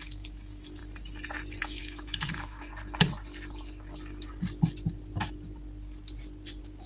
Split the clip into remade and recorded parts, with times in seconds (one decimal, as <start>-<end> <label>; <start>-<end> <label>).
0.0-0.8 remade; 0.8-1.6 recorded; 1.6-2.7 remade; 2.7-6.9 recorded